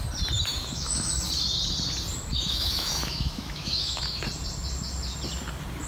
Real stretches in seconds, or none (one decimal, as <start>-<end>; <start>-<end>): 0.0-0.5; 1.1-2.3; 4.2-5.9